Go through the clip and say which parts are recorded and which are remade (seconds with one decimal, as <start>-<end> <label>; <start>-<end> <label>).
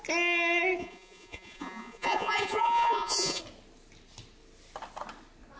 0.0-0.8 recorded; 0.8-3.4 remade; 3.4-5.6 recorded